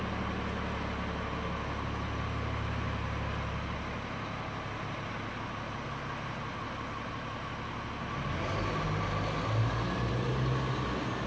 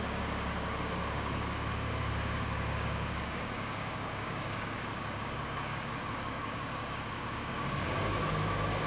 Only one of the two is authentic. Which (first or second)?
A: first